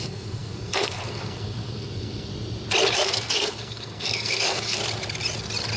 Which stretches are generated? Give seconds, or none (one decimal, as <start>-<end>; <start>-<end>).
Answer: 0.0-2.3; 2.9-4.8